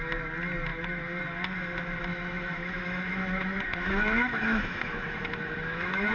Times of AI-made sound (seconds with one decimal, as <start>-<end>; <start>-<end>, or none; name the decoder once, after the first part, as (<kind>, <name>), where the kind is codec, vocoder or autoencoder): 0.7-1.2 (autoencoder, DAC-VAE); 2.1-6.1